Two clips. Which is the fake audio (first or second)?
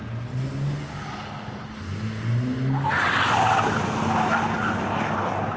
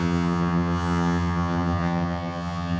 second